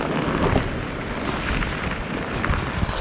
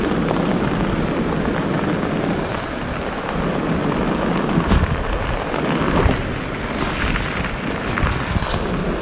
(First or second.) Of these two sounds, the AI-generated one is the first